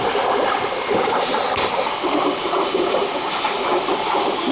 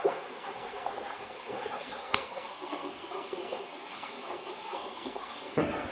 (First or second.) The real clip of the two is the first